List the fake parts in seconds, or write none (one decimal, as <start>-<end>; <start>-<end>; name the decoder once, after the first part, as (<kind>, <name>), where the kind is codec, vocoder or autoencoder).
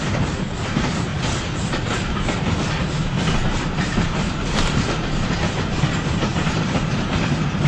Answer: 0.0-1.1 (vocoder, BigVGAN v2); 3.6-7.7